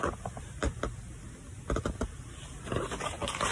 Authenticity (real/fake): real